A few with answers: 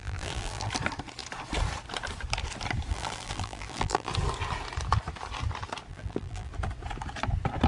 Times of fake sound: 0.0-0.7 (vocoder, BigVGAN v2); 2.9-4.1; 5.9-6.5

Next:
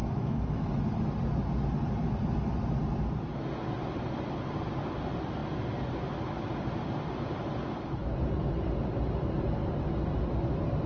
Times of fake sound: 0.0-0.8 (autoencoder, DAC-VAE)

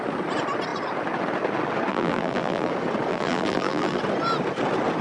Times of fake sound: 1.9-2.7 (vocoder, BigVGAN v2); 3.1-4.0